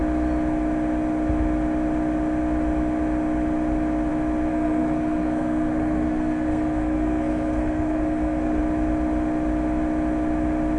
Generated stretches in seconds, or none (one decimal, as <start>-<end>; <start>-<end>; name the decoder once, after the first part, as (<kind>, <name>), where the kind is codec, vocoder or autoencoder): 4.5-8.6 (codec, SNAC)